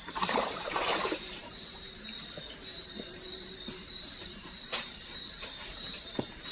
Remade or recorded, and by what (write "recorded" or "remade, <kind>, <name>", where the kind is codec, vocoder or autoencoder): remade, vocoder, BigVGAN v2